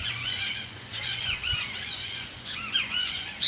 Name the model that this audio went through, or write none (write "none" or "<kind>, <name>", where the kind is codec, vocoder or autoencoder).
vocoder, Vocos